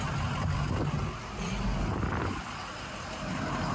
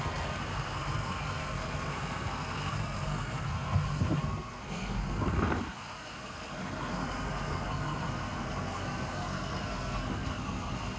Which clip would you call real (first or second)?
first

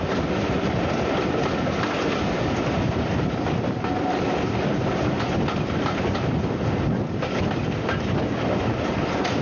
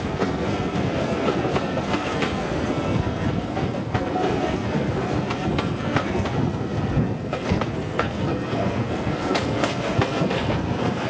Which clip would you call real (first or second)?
first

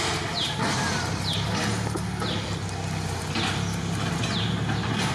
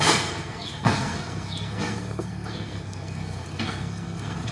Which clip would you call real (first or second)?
first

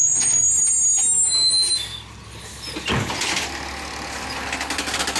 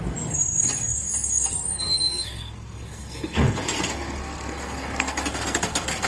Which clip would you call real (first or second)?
first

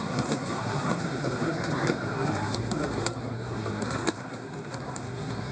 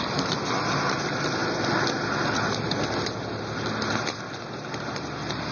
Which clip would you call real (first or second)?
second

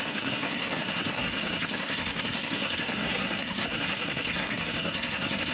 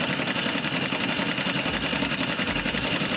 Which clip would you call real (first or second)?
second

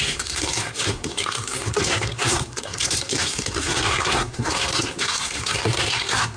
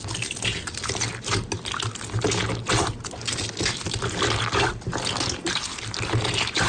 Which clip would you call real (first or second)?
second